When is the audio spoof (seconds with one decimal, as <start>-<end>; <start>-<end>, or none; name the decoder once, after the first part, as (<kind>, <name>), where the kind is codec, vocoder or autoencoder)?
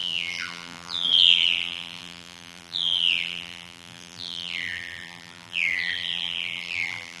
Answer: 0.0-7.2 (vocoder, BigVGAN v2)